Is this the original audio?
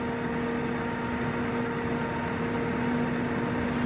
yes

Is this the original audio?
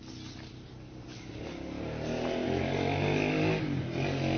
yes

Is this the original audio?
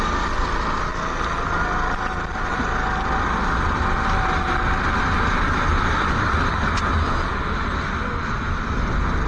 yes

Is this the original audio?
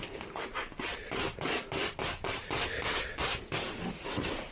yes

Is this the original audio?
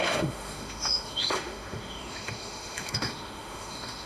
no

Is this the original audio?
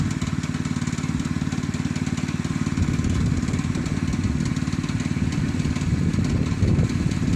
yes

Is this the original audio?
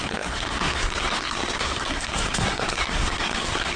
no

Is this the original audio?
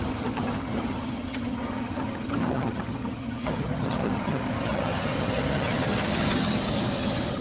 no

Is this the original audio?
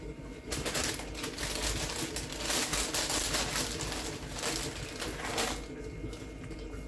yes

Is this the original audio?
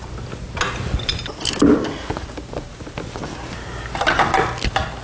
yes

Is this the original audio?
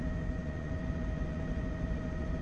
no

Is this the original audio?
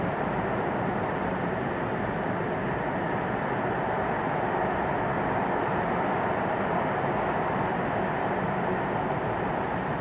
yes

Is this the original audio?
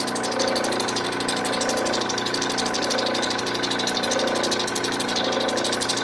yes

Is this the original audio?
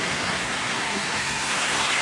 no